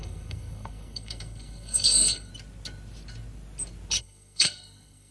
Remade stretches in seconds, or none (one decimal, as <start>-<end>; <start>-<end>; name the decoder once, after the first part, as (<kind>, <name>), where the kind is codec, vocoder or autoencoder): 0.0-2.3 (codec, SNAC); 4.0-5.1